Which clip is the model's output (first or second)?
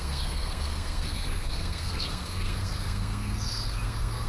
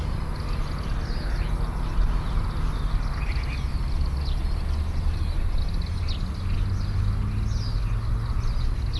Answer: first